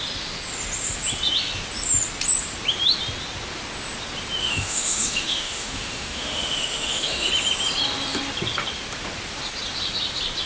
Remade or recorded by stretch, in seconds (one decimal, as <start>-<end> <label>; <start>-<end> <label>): 0.0-4.4 recorded; 4.4-7.3 remade; 7.3-10.5 recorded